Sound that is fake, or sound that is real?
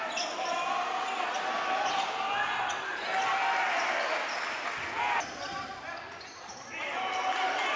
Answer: real